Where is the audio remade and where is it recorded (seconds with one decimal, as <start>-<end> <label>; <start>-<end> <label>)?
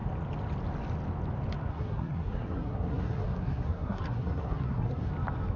0.0-1.7 recorded; 1.7-5.1 remade; 5.1-5.6 recorded